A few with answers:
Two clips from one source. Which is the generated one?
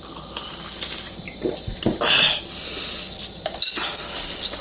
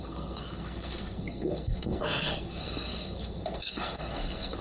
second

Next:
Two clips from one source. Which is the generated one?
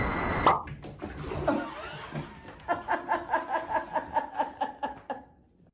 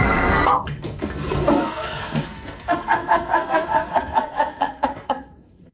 second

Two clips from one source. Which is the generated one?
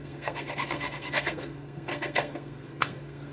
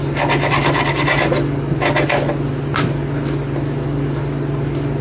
first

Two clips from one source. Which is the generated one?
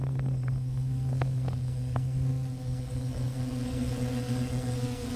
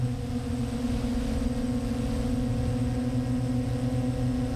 first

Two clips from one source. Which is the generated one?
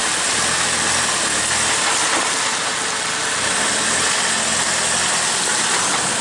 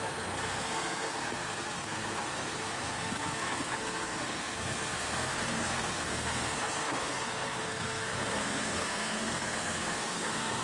second